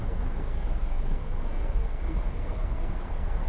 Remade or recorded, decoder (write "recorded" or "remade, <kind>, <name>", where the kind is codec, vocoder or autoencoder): remade, codec, SNAC